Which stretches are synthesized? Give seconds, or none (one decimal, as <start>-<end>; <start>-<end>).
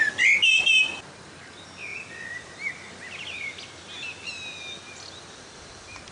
none